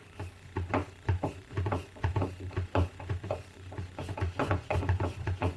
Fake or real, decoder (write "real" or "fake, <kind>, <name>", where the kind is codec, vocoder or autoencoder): fake, vocoder, Vocos